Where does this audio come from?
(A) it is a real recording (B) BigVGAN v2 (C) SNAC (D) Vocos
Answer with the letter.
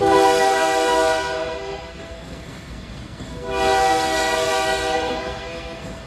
C